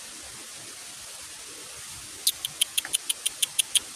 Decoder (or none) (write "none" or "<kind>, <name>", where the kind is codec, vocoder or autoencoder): none